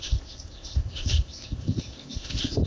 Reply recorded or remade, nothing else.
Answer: remade